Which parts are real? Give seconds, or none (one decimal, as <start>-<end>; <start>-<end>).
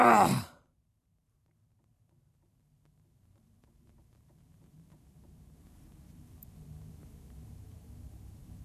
none